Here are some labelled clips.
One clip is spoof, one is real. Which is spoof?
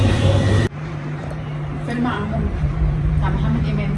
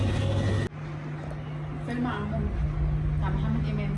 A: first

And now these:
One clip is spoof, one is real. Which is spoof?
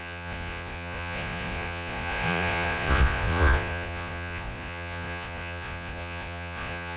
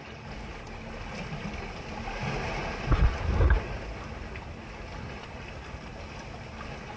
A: first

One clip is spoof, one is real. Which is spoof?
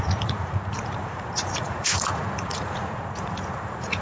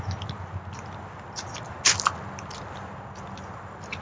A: first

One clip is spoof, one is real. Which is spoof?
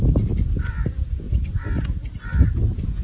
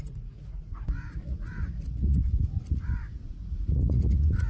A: second